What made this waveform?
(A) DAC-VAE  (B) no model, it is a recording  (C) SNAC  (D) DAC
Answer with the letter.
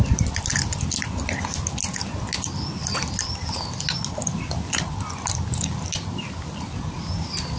B